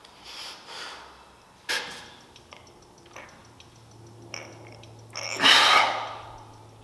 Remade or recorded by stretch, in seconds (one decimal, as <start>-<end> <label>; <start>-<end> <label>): 0.0-6.8 recorded